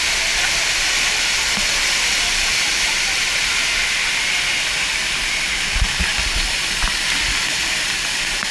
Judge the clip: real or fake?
real